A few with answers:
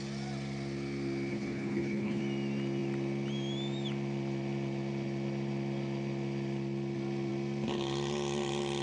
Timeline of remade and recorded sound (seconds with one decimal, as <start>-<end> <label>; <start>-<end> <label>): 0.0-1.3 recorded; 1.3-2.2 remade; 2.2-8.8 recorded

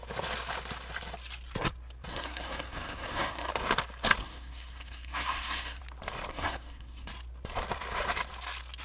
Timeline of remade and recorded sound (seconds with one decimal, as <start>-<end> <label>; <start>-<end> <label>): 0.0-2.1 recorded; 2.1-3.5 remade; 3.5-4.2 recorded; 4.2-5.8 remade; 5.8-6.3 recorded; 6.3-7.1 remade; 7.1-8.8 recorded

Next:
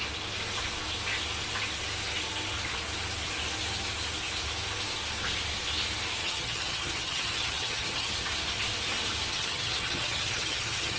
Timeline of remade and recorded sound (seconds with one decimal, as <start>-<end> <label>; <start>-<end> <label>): 0.0-6.2 recorded; 6.2-8.1 remade; 8.1-9.3 recorded; 9.3-11.0 remade